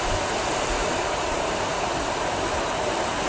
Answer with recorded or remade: recorded